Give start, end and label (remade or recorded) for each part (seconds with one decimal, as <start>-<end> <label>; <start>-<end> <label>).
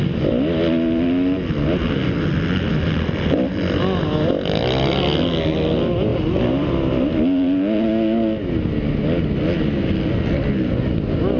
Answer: 0.0-11.4 recorded